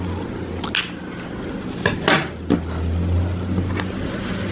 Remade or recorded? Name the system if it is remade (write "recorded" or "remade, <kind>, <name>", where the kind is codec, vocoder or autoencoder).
recorded